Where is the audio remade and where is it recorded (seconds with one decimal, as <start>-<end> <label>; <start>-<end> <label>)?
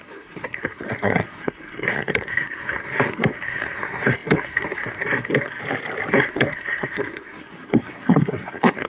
0.0-5.6 remade; 5.6-6.1 recorded; 6.1-8.9 remade